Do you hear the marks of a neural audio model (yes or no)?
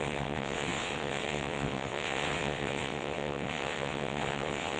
yes